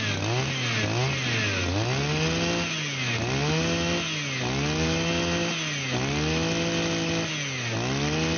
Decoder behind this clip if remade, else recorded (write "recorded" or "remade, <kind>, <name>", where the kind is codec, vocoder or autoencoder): recorded